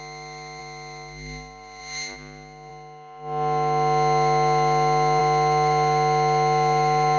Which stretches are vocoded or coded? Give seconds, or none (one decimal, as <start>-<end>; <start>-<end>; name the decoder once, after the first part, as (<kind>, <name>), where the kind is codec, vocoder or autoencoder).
none